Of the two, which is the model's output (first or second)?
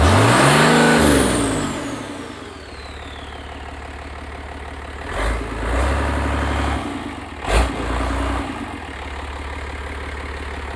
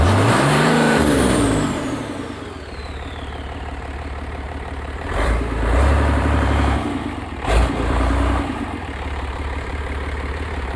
second